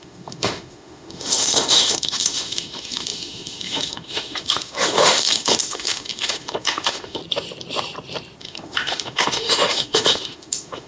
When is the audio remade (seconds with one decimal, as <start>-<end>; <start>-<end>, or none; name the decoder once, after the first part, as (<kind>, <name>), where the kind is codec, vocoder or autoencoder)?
0.0-7.2 (autoencoder, DAC-VAE); 8.4-10.9